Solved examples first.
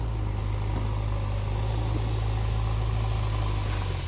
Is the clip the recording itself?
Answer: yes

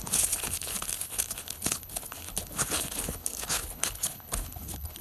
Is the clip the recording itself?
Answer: no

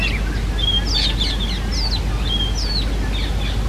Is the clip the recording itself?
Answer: yes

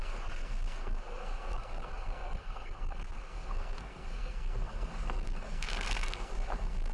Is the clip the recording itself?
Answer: no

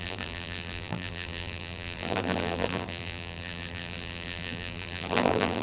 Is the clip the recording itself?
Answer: no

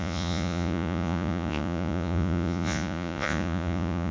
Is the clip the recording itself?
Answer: no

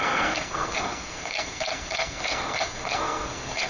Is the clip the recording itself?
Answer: no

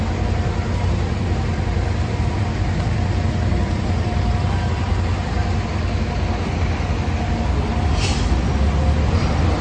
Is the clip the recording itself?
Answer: yes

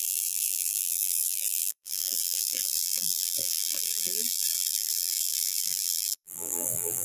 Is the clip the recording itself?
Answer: no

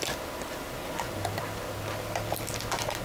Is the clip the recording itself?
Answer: yes